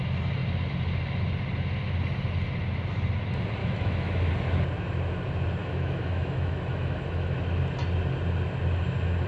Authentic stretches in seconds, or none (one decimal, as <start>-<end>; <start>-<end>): 0.0-3.6; 4.3-5.6; 7.4-9.3